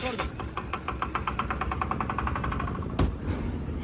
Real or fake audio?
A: real